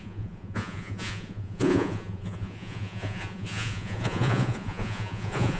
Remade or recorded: remade